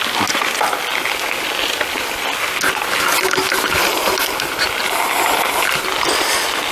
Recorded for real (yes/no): yes